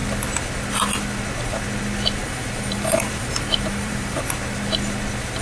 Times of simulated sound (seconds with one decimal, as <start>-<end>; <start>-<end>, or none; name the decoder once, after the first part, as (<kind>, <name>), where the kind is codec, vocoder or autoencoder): 2.2-4.2 (vocoder, BigVGAN v2)